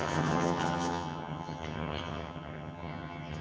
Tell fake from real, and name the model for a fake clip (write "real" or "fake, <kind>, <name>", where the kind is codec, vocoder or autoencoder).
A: fake, vocoder, HiFi-GAN